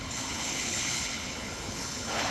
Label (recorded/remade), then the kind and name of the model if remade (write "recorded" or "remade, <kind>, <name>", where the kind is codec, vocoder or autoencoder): remade, codec, HILCodec